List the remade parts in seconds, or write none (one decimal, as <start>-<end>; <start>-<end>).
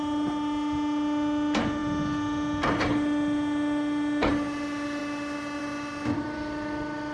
none